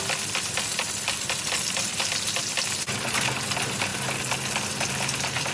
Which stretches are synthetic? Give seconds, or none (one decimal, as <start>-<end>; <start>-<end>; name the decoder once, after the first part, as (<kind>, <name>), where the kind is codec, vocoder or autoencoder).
none